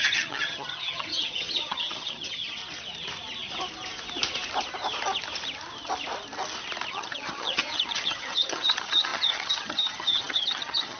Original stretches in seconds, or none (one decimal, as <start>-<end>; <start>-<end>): 2.6-6.9